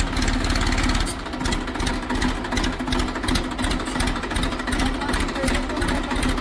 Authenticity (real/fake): real